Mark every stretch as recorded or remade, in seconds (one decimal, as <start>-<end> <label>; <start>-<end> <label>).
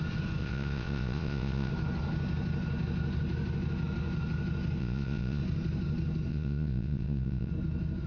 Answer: 0.0-0.4 recorded; 0.4-1.7 remade; 1.7-4.8 recorded; 4.8-5.4 remade; 5.4-6.3 recorded; 6.3-7.5 remade; 7.5-8.1 recorded